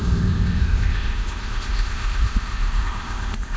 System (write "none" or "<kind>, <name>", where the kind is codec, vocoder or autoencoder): codec, ZipCodec